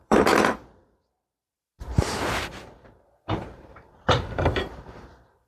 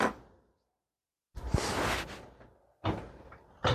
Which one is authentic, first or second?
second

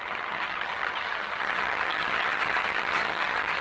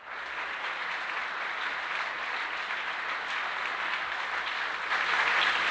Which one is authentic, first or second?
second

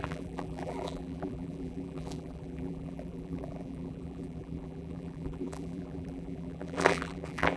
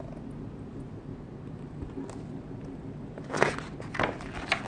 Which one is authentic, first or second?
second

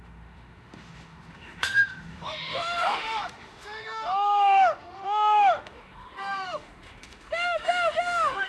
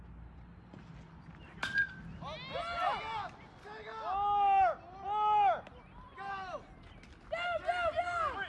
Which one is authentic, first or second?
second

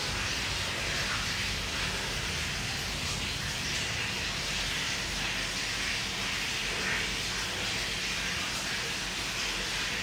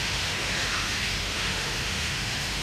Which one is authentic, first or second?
first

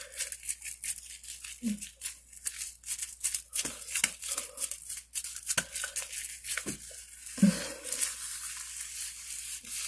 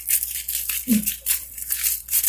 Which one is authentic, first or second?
first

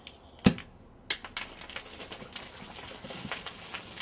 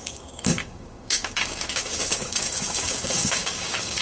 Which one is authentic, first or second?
first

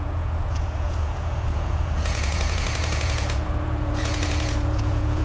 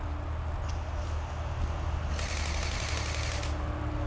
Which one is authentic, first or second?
second